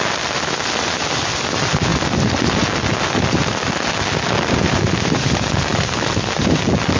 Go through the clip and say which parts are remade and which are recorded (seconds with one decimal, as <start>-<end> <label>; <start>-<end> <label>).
0.0-7.0 recorded